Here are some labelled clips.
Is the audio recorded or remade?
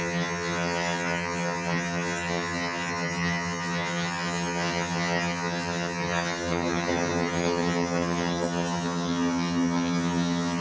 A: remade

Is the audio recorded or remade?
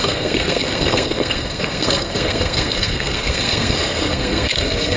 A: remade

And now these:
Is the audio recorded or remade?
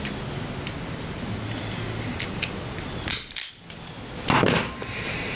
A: recorded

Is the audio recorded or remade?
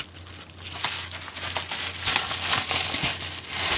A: recorded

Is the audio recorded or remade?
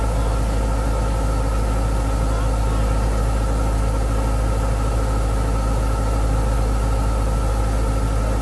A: recorded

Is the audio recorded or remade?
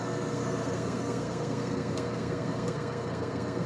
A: remade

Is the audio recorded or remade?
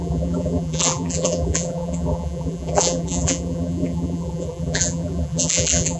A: remade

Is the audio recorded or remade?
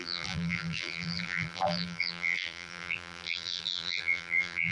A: remade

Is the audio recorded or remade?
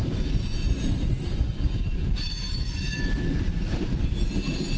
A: remade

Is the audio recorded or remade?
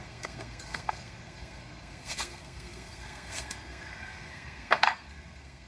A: remade